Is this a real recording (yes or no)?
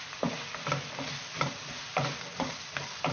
yes